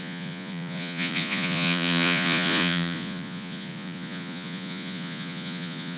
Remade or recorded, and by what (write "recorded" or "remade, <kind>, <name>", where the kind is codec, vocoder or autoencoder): remade, vocoder, Vocos